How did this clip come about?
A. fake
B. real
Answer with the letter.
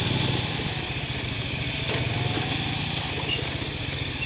B